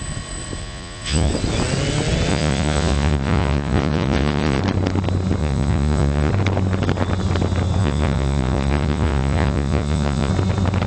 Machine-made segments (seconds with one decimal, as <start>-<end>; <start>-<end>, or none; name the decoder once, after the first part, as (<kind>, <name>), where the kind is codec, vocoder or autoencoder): 0.6-1.3 (vocoder, Vocos); 2.3-4.6; 5.4-6.3; 7.8-10.3